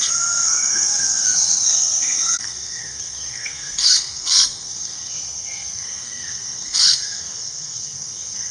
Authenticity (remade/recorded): remade